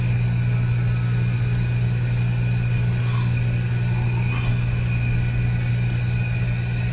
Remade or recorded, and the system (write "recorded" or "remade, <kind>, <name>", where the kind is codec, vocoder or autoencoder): recorded